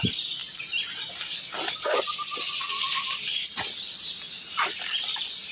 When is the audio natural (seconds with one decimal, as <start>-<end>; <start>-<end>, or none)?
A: 0.0-5.5